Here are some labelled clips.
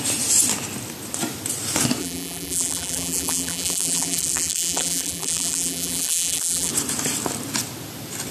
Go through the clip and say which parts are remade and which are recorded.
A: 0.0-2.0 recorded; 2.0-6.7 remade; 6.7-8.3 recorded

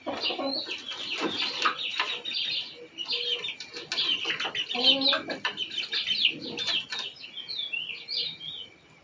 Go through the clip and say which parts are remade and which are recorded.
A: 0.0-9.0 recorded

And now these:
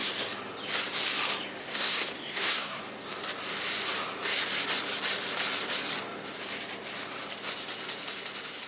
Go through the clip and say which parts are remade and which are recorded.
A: 0.0-1.6 recorded; 1.6-2.8 remade; 2.8-8.7 recorded

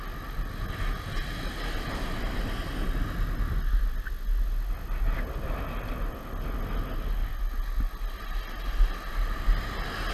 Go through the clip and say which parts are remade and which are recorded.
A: 0.0-10.1 recorded

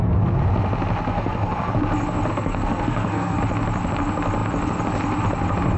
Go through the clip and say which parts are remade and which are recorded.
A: 0.0-1.1 recorded; 1.1-1.7 remade; 1.7-2.3 recorded; 2.3-3.4 remade; 3.4-5.8 recorded

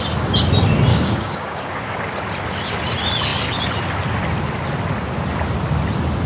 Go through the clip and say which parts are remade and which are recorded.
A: 0.0-0.9 recorded; 0.9-2.0 remade; 2.0-6.3 recorded

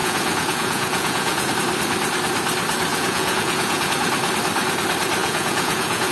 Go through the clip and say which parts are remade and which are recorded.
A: 0.0-1.5 remade; 1.5-2.9 recorded; 2.9-3.9 remade; 3.9-5.2 recorded; 5.2-6.1 remade

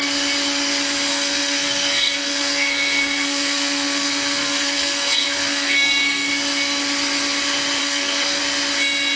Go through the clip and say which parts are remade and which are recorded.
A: 0.0-1.1 recorded; 1.1-6.3 remade; 6.3-7.8 recorded; 7.8-8.4 remade; 8.4-9.2 recorded